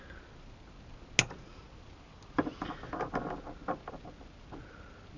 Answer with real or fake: real